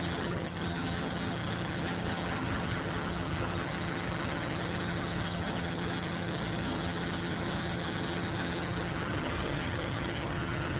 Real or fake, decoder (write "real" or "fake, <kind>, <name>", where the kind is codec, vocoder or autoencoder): fake, vocoder, HiFi-GAN